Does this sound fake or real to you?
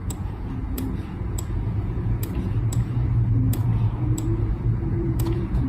fake